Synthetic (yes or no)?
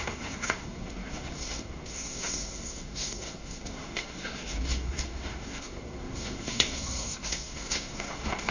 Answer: yes